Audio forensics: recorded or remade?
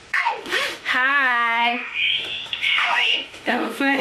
remade